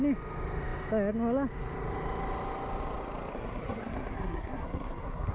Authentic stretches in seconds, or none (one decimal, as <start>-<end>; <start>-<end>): 0.0-3.3